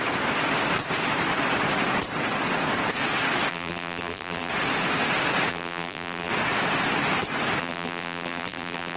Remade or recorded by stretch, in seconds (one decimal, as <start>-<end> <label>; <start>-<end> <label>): 0.0-3.5 recorded; 3.5-4.5 remade; 4.5-5.5 recorded; 5.5-6.3 remade; 6.3-7.6 recorded; 7.6-9.0 remade